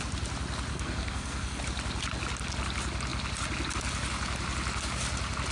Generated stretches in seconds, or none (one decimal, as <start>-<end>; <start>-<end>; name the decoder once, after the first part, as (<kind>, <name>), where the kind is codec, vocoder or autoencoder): 0.7-1.6 (codec, SNAC)